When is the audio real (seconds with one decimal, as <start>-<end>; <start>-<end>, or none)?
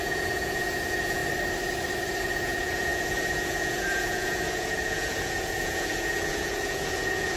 1.2-2.2